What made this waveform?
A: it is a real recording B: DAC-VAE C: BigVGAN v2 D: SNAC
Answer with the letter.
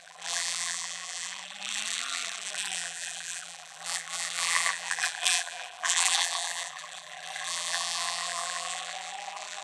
C